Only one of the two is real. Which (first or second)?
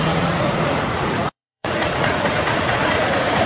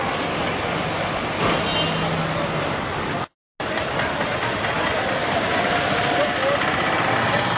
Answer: second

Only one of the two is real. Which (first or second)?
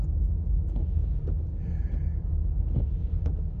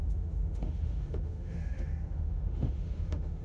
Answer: first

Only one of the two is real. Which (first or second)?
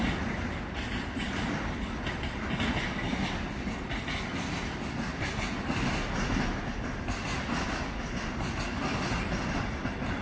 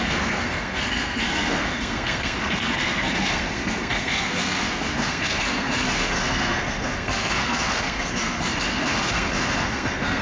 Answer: first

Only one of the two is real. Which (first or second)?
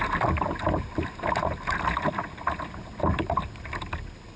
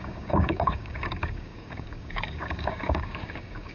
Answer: first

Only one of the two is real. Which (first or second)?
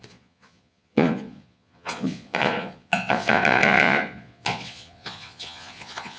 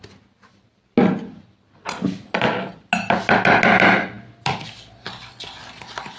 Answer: second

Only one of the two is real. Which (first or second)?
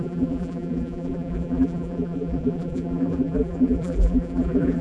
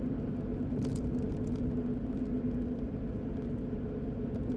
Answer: second